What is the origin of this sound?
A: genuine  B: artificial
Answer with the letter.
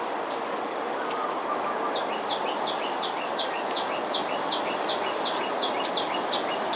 A